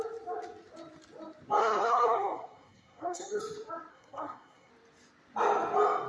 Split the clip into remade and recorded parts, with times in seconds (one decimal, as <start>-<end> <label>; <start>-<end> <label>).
0.0-1.6 recorded; 1.6-3.4 remade; 3.4-3.9 recorded; 3.9-4.7 remade; 4.7-6.1 recorded